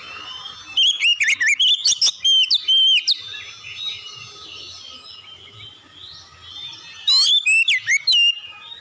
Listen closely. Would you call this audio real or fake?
real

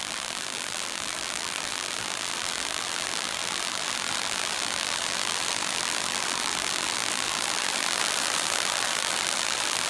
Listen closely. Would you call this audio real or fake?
fake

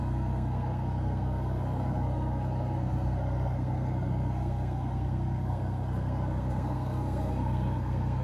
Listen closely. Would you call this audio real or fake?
fake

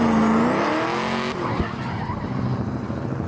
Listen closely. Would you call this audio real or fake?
real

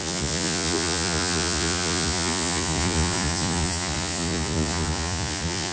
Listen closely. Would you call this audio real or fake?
fake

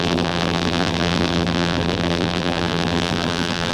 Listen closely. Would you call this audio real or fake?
fake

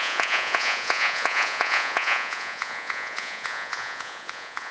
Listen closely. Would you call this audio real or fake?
fake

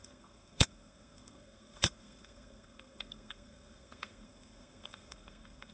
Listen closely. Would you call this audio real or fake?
fake